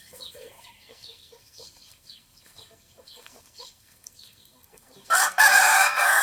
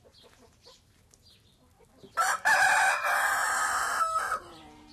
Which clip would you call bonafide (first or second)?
second